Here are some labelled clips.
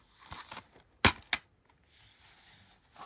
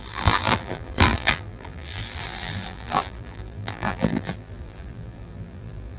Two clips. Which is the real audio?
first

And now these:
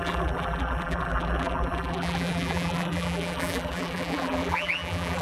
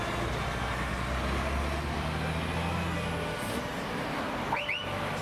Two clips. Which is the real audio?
second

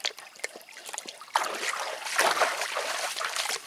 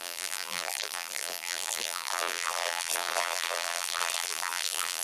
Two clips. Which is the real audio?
first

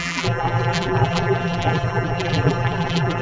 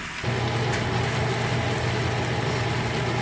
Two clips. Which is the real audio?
second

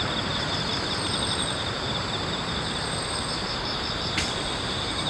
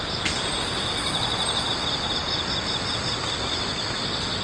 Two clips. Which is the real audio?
second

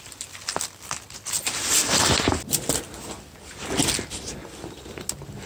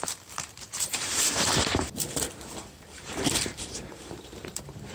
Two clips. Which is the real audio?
first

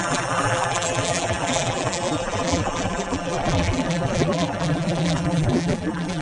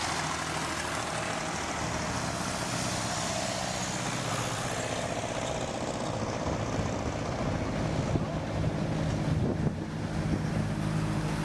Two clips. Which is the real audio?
second